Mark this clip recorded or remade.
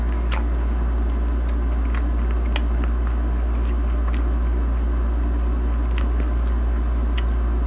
recorded